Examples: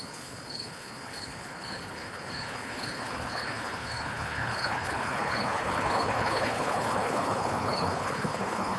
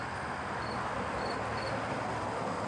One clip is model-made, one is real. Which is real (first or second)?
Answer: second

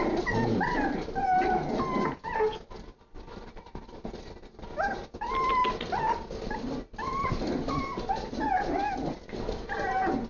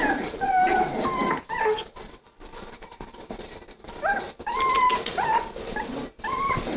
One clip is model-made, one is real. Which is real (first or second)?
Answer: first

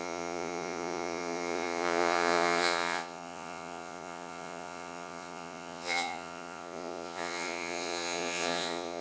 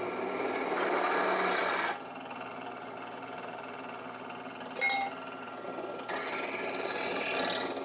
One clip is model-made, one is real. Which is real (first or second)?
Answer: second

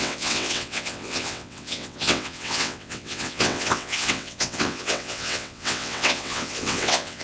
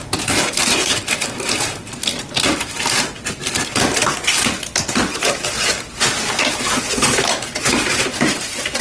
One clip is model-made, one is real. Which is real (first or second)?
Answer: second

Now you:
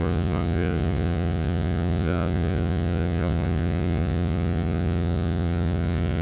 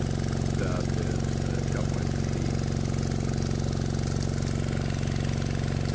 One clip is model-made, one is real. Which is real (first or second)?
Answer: second